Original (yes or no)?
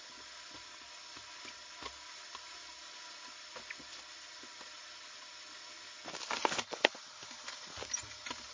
yes